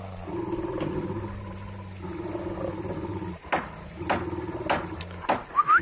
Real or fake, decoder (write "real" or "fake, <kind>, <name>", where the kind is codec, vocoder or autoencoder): real